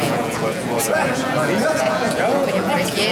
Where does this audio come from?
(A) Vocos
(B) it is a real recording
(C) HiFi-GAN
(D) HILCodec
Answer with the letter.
A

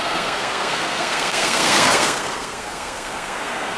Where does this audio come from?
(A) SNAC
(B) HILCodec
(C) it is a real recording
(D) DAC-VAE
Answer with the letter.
A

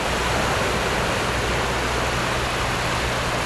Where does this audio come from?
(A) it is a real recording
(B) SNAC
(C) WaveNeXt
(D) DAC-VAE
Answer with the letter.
A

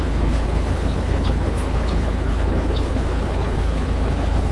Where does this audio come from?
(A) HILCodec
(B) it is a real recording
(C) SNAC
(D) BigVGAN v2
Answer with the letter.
A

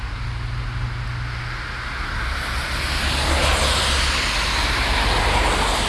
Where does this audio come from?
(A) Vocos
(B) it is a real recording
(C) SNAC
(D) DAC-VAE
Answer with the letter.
B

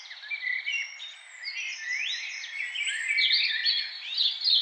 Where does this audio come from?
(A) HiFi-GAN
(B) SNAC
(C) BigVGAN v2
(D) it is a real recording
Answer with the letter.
D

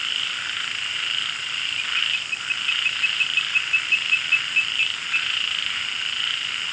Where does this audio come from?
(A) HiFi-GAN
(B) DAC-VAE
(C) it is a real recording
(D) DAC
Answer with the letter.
C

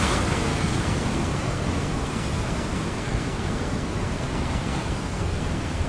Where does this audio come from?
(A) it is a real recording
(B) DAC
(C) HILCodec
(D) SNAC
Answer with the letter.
D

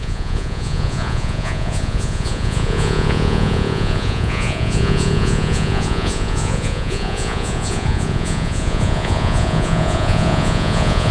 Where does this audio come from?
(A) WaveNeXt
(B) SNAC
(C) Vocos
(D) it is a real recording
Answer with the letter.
C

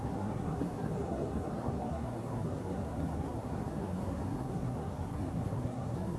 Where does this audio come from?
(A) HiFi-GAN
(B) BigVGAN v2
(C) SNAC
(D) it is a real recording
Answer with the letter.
C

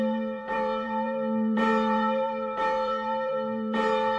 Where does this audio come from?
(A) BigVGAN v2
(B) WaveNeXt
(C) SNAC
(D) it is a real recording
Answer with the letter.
A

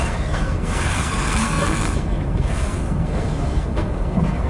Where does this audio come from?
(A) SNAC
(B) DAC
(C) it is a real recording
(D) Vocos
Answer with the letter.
A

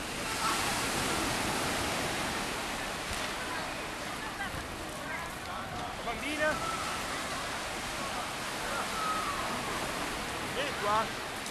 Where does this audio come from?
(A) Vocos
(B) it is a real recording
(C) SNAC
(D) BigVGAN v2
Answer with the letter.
B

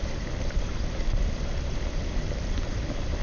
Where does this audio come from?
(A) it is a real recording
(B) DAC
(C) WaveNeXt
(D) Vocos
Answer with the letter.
A